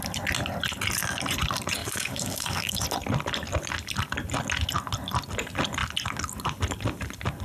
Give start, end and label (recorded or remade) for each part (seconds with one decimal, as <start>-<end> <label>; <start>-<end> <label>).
0.0-1.8 recorded; 1.8-2.7 remade; 2.7-7.4 recorded